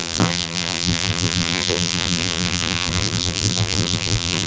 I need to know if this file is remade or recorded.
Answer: remade